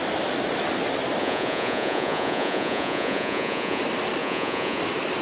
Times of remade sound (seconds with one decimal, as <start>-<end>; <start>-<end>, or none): 1.2-3.8; 4.2-4.8